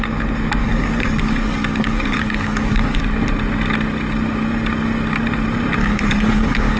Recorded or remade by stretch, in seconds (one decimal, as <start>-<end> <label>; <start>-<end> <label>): 0.0-0.6 recorded; 0.6-3.0 remade; 3.0-5.8 recorded; 5.8-6.8 remade